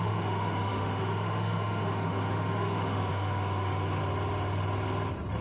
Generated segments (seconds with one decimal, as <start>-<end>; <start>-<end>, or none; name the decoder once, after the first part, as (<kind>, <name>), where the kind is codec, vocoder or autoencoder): 0.0-4.0 (autoencoder, DAC-VAE)